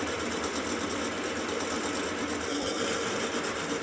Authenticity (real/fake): real